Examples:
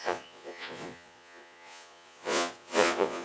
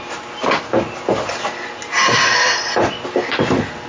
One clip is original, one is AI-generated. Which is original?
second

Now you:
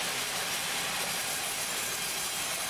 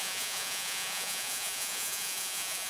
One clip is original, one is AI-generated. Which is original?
first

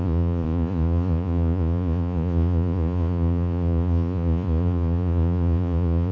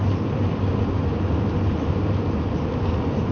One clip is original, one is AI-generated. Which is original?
second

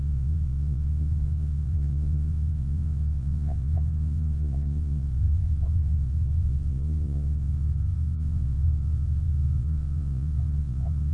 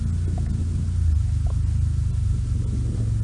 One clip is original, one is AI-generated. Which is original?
second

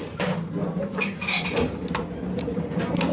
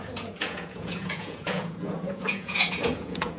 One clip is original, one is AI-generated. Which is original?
first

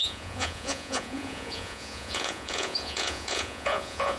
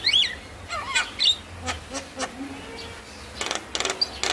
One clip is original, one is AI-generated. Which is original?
second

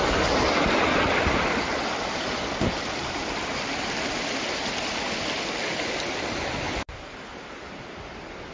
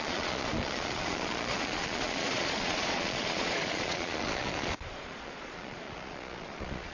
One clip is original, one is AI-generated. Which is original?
first